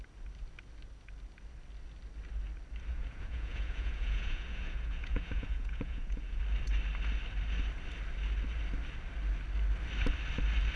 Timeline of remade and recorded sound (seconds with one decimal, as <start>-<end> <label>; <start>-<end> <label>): 0.0-2.9 recorded; 2.9-6.4 remade; 6.4-10.8 recorded